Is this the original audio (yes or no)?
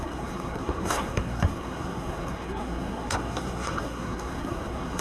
no